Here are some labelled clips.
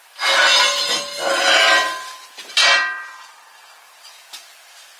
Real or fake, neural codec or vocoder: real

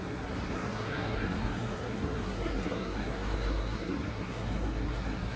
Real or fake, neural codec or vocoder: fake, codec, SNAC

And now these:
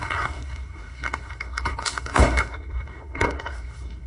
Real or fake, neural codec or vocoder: fake, codec, SNAC